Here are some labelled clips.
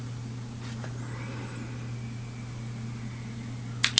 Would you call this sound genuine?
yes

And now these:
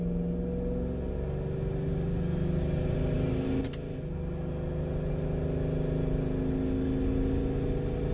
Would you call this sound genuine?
yes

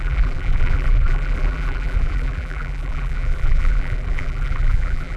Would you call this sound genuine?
no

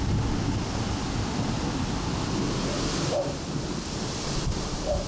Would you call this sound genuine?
yes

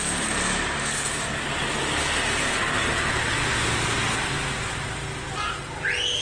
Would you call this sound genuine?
yes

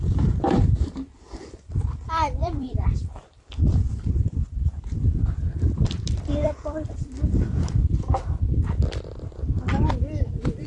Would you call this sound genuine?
no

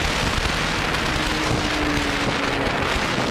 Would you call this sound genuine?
yes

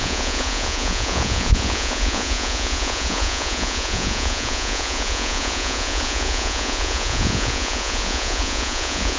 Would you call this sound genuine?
no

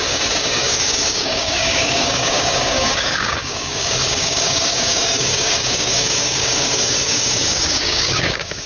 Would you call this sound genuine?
no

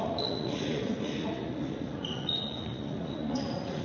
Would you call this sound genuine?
no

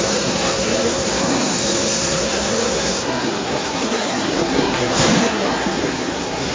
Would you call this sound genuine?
no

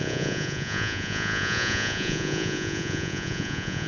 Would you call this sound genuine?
no